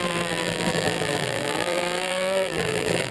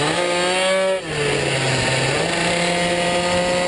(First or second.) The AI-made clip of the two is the first